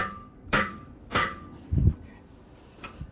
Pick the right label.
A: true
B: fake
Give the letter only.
B